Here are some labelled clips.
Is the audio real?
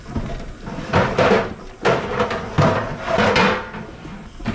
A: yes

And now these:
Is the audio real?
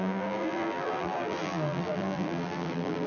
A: no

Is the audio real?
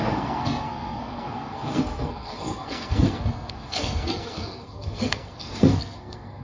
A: no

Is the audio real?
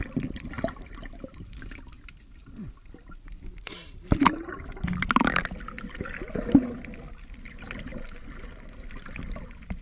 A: yes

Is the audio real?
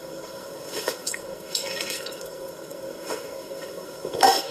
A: no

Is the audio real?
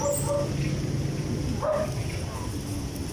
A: yes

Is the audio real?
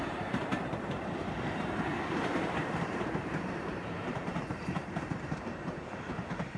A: no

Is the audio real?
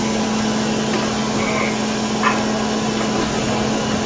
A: yes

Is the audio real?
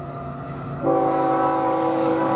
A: no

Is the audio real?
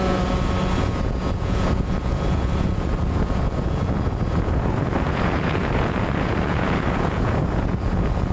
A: no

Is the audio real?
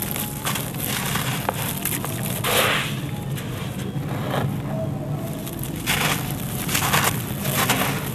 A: yes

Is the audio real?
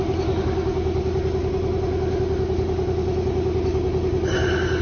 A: yes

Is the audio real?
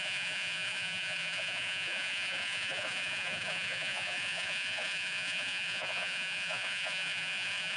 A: no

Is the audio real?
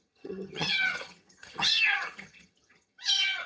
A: no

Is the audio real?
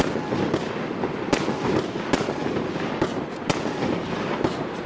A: yes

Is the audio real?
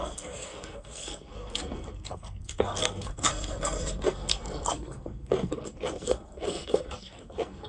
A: no